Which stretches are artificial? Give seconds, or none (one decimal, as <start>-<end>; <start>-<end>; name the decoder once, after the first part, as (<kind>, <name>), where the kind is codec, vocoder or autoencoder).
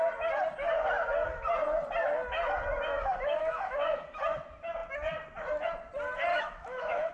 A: 2.9-4.2 (autoencoder, DAC-VAE); 6.3-7.1